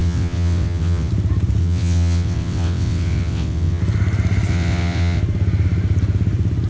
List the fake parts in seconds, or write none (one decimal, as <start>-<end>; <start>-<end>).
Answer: 0.0-1.1; 1.6-3.8; 4.5-5.2